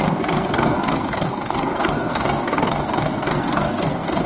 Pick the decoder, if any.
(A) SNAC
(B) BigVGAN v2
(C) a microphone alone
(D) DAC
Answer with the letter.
A